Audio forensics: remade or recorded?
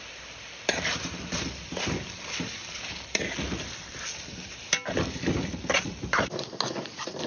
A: recorded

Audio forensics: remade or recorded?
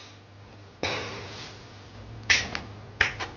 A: recorded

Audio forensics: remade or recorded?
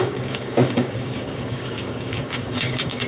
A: remade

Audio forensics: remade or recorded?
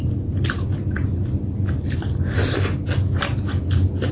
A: recorded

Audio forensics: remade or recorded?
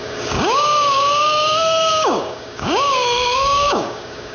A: remade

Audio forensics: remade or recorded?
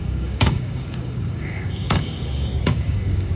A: remade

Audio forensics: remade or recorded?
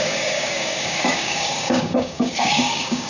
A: remade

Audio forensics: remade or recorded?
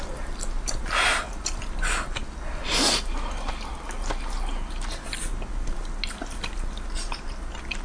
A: recorded